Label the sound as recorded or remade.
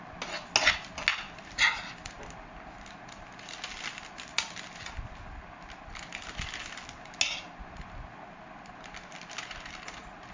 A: recorded